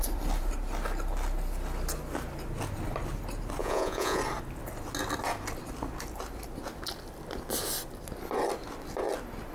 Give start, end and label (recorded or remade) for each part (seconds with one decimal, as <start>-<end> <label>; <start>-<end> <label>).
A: 0.0-3.6 recorded; 3.6-4.2 remade; 4.2-9.5 recorded